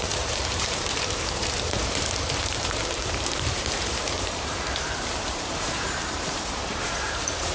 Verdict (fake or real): fake